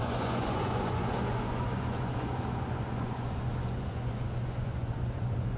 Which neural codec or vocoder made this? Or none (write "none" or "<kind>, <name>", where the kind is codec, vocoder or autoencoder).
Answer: vocoder, Vocos